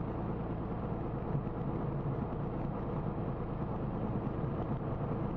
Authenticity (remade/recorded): recorded